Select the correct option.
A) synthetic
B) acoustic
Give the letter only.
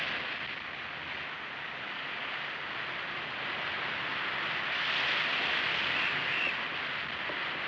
B